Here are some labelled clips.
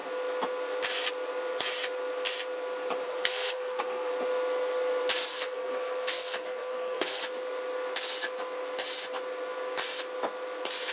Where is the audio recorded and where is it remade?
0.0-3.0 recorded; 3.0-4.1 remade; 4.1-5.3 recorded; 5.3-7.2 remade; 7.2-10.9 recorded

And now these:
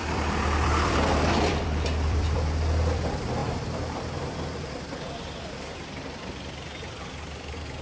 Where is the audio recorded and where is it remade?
0.0-7.8 remade

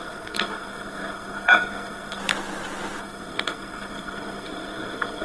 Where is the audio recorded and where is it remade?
0.0-2.2 remade; 2.2-3.0 recorded; 3.0-5.2 remade

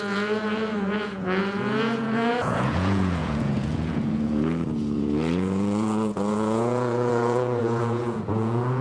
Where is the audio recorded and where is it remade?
0.0-8.8 remade